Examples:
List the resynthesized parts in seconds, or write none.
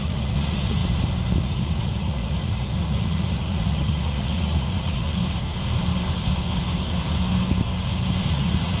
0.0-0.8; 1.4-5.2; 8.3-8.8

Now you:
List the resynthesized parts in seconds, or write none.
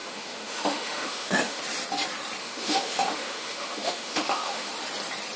0.0-1.6; 2.4-4.7